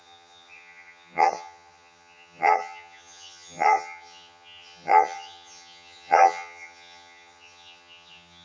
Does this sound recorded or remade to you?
remade